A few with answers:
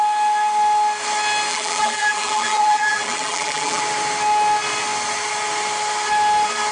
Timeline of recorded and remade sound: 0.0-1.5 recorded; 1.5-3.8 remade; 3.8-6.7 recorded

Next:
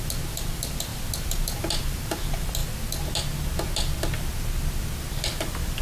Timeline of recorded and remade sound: 0.0-2.6 remade; 2.6-5.2 recorded; 5.2-5.8 remade

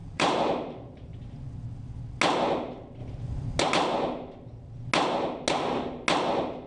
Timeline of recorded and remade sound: 0.0-1.2 remade; 1.2-6.7 recorded